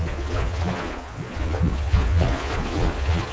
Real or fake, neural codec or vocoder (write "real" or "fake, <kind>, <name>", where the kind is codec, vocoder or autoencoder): fake, vocoder, Vocos